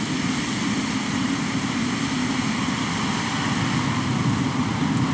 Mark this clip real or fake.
real